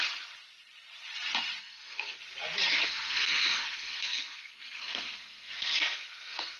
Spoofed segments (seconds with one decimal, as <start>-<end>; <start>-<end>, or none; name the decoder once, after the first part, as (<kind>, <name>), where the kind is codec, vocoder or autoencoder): 1.6-2.2 (codec, SNAC); 2.7-6.6

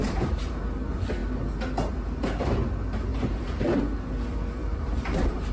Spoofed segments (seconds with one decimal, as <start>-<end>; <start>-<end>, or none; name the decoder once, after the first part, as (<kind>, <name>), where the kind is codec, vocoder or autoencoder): 0.0-0.6 (vocoder, BigVGAN v2); 3.1-3.8; 4.6-5.5

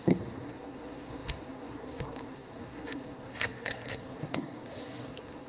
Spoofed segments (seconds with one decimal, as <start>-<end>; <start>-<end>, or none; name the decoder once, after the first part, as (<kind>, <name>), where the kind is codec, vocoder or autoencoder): 0.0-5.5 (codec, SNAC)

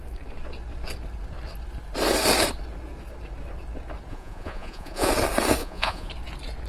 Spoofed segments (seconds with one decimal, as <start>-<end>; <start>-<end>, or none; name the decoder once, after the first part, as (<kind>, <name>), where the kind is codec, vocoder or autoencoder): 4.1-5.1 (vocoder, Vocos); 5.6-6.1

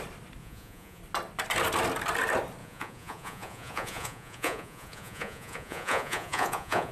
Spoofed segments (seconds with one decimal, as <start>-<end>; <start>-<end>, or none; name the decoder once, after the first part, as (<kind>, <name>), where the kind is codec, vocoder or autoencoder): 0.4-1.0 (vocoder, Vocos); 2.6-6.9